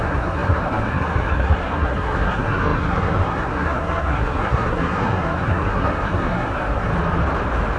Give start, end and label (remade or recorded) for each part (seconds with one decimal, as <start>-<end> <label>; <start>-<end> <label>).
0.0-6.9 remade; 6.9-7.8 recorded